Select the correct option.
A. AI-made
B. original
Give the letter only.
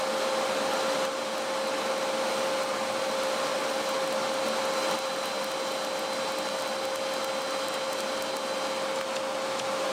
B